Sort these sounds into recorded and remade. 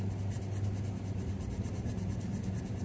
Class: recorded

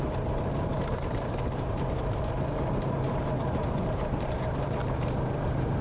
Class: remade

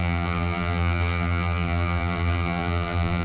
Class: remade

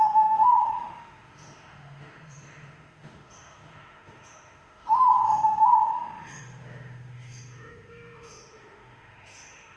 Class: remade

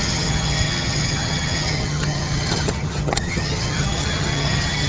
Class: remade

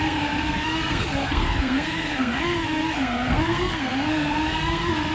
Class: remade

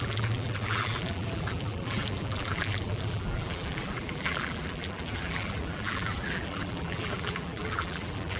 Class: remade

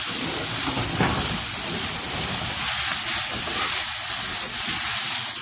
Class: remade